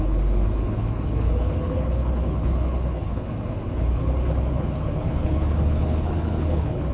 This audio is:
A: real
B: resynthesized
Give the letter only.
B